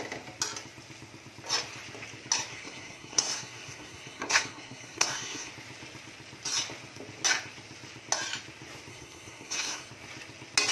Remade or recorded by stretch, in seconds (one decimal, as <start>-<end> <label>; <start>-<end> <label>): 0.0-2.5 recorded; 2.5-5.5 remade; 5.5-8.9 recorded; 8.9-9.9 remade; 9.9-10.7 recorded